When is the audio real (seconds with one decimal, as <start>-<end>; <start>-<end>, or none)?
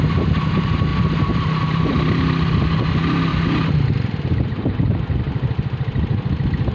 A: 0.0-0.9; 2.2-3.3; 4.8-6.7